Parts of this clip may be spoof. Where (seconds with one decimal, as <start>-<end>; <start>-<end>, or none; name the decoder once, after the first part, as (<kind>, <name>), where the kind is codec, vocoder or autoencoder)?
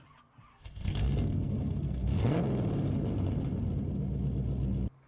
0.5-2.4 (codec, SNAC)